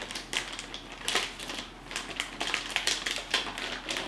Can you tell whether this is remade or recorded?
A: recorded